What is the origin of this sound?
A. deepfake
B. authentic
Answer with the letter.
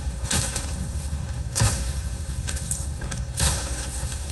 A